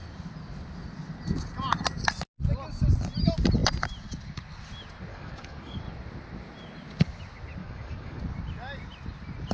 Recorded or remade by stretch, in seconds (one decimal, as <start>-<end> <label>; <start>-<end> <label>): 0.0-5.1 recorded; 5.1-5.8 remade; 5.8-7.6 recorded; 7.6-8.2 remade; 8.2-9.5 recorded